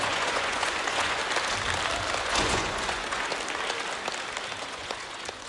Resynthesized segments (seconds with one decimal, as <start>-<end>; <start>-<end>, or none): 0.0-1.2; 2.2-3.3; 4.6-5.5